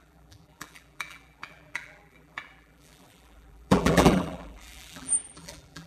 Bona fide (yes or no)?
no